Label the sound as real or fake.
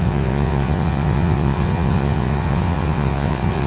fake